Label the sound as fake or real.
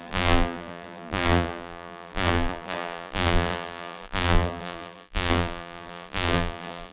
fake